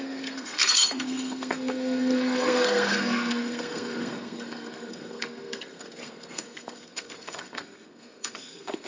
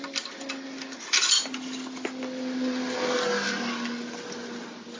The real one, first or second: second